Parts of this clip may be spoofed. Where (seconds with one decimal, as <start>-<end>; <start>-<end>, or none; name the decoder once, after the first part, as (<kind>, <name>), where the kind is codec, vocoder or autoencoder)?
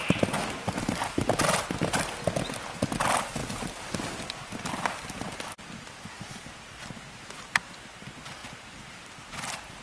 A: none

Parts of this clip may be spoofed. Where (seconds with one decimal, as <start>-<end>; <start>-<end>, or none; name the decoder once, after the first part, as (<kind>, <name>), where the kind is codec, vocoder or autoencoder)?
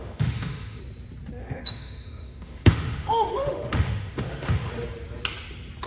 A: 0.0-0.8 (autoencoder, DAC-VAE); 1.4-4.7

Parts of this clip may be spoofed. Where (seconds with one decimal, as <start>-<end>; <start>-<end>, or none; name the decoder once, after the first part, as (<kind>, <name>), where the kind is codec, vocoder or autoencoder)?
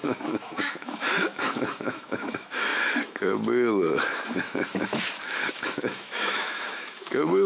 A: 0.0-7.5 (autoencoder, DAC-VAE)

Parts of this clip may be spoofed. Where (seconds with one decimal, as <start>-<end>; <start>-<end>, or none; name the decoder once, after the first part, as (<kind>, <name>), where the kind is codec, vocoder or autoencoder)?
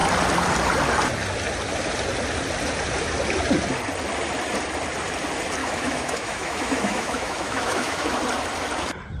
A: 5.6-8.2 (autoencoder, DAC-VAE)